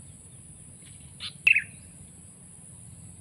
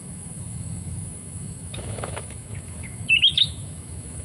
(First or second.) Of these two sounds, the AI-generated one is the second